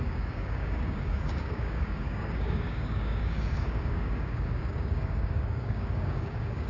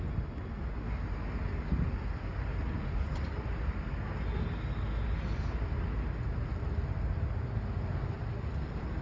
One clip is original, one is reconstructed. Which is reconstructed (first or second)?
first